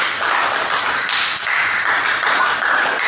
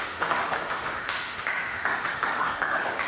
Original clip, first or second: first